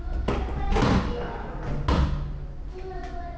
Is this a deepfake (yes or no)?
no